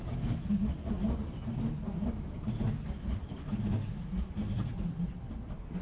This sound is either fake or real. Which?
real